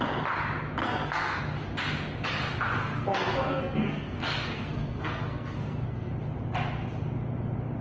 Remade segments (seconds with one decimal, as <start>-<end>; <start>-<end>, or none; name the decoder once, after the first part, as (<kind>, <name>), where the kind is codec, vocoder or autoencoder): 0.8-1.4 (codec, SNAC); 2.8-6.1